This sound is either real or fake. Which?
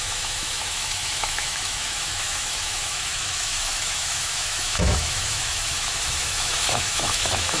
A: fake